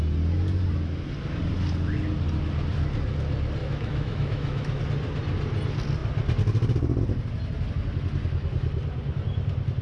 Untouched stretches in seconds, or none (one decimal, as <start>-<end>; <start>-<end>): 0.0-3.6; 4.8-9.8